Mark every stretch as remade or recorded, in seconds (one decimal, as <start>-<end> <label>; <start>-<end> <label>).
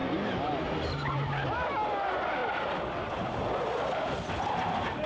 0.0-5.1 recorded